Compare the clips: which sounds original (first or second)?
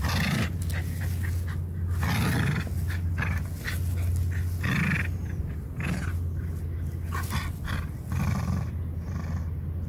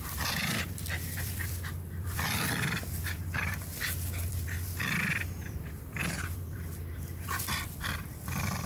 first